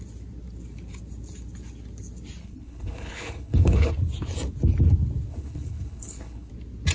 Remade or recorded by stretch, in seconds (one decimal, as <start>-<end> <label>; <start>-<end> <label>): 0.0-2.4 recorded; 2.4-3.9 remade; 3.9-5.3 recorded; 5.3-6.5 remade; 6.5-6.9 recorded